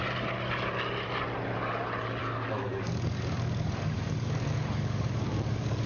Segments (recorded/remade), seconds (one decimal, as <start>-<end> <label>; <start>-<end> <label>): 0.0-2.2 recorded; 2.2-5.9 remade